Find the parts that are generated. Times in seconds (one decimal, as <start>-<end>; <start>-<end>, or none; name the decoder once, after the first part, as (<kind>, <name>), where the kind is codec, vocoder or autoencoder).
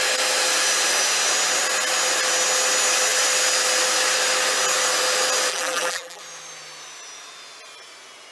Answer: 5.5-6.2 (vocoder, BigVGAN v2)